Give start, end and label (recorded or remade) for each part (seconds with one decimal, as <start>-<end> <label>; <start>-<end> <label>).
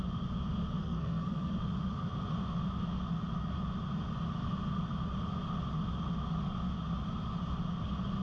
0.0-0.8 recorded; 0.8-1.5 remade; 1.5-8.2 recorded